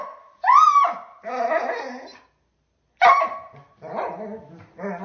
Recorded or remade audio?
recorded